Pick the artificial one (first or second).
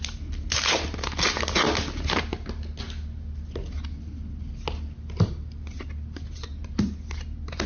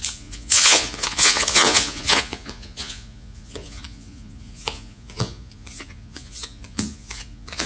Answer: second